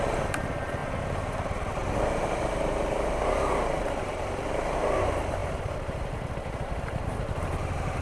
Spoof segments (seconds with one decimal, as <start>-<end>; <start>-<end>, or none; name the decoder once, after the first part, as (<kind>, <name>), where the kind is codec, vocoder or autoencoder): 0.0-0.8 (vocoder, BigVGAN v2); 2.4-8.0